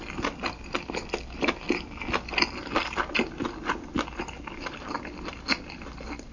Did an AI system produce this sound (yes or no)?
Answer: no